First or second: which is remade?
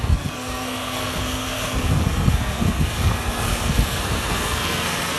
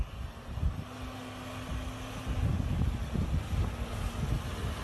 first